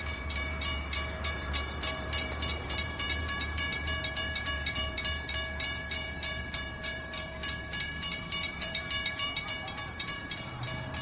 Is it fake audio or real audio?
fake